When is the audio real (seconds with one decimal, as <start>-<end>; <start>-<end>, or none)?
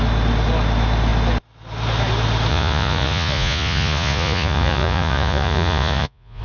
0.0-2.5